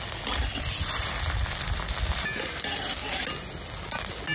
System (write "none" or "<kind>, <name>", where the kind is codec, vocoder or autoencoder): none